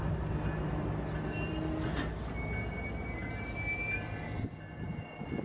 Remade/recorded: recorded